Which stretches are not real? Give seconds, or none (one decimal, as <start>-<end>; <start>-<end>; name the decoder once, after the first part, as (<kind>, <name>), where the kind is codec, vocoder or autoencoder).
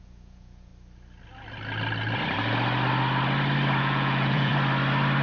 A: 0.0-0.7 (vocoder, Vocos); 3.8-4.5